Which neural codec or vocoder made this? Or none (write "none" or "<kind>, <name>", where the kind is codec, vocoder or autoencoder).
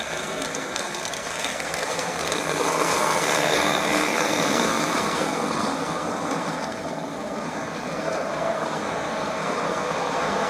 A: codec, SNAC